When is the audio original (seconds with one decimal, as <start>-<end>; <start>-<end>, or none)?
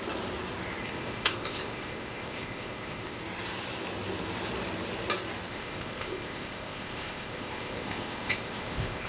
0.0-0.8; 3.2-5.5